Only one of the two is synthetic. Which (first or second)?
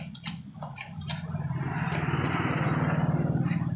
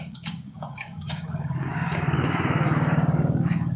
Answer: second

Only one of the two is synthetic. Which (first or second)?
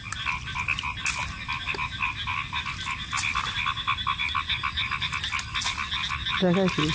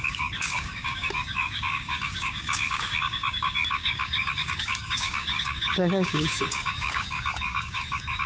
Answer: second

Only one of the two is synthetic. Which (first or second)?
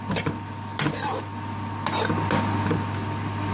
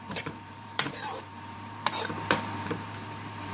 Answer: second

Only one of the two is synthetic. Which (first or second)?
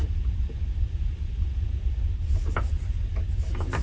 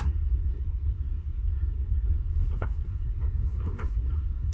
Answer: second